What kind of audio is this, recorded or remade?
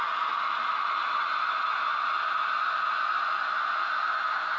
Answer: recorded